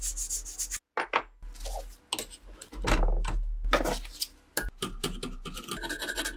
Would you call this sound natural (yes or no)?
yes